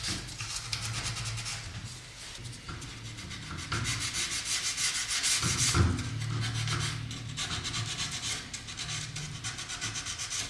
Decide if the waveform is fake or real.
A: real